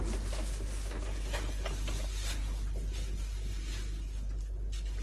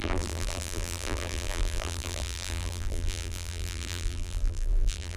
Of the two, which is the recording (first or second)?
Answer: first